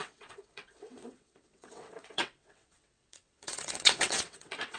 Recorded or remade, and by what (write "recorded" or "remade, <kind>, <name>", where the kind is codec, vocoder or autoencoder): remade, vocoder, WaveNeXt